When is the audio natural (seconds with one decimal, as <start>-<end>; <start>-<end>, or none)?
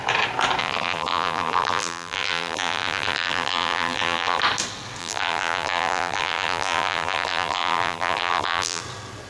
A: 0.0-0.6; 4.4-5.0; 8.8-9.3